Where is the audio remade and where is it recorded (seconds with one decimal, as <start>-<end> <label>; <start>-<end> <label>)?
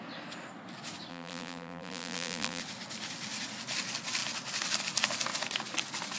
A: 0.0-1.1 recorded; 1.1-2.6 remade; 2.6-6.2 recorded